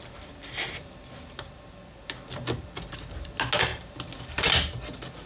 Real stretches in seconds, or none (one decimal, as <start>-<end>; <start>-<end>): 0.0-5.3